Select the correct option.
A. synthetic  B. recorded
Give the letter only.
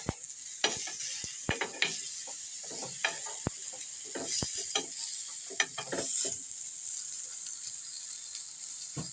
B